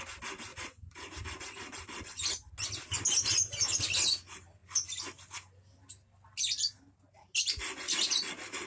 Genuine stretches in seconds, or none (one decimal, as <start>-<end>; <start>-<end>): 0.0-0.5; 1.2-8.7